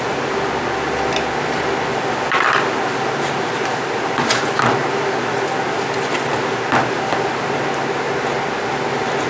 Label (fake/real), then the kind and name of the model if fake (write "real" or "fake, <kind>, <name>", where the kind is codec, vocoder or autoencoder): real